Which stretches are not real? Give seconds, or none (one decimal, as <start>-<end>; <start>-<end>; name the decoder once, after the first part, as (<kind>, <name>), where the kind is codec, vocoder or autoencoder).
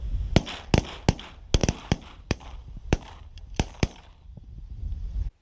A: 1.6-4.8 (vocoder, BigVGAN v2)